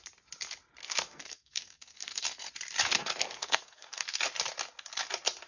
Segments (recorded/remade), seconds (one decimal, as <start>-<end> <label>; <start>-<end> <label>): 0.0-0.8 recorded; 0.8-2.5 remade; 2.5-2.9 recorded; 2.9-4.2 remade; 4.2-5.5 recorded